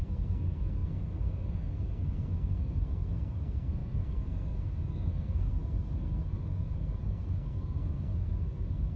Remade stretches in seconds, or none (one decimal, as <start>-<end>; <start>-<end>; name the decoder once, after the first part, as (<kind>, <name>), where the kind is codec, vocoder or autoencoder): 0.0-9.0 (codec, SNAC)